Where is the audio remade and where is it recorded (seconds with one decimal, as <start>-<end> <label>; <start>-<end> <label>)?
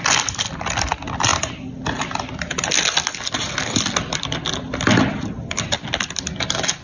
0.0-6.8 recorded